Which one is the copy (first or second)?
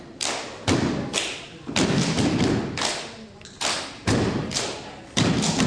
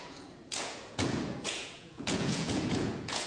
second